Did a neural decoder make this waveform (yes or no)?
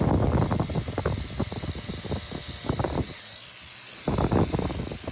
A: no